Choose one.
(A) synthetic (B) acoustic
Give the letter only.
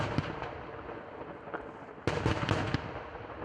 B